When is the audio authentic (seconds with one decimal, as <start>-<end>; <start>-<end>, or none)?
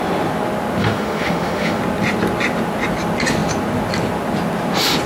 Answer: 0.0-0.8; 1.8-5.1